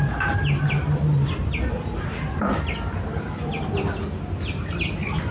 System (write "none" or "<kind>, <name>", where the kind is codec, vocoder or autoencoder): none